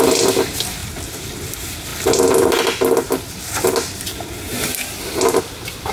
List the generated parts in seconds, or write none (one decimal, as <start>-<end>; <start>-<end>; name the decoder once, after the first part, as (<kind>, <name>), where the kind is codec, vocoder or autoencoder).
none